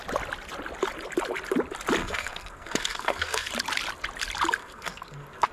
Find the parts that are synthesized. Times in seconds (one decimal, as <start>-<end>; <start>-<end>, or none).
2.0-3.5; 4.6-5.5